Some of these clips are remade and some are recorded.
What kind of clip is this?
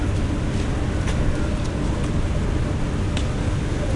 recorded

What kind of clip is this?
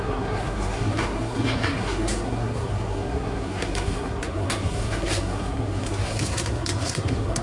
remade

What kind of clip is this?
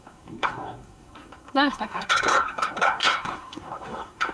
remade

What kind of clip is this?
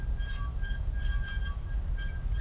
recorded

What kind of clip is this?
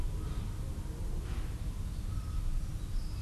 recorded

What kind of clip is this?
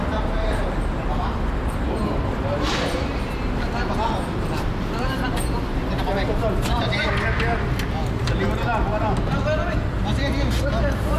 recorded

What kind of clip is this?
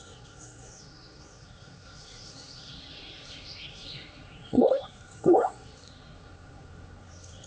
remade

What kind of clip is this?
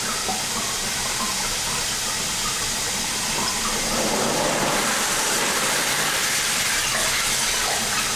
recorded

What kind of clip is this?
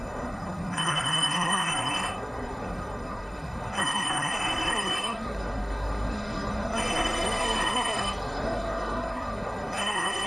remade